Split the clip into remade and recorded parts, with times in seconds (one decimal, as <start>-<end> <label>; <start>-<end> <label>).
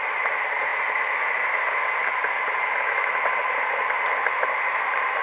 0.0-5.2 recorded